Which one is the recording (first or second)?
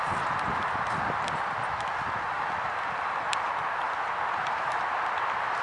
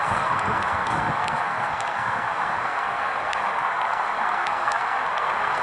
first